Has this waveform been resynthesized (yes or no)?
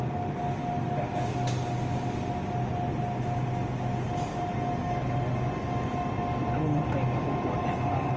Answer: no